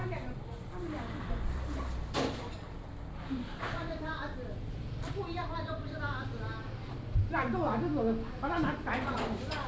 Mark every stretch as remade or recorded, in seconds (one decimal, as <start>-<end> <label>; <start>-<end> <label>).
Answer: 0.0-9.7 recorded